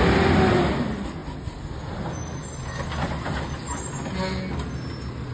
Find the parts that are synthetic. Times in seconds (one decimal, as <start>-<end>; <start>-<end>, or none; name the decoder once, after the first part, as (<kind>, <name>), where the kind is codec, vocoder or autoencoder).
none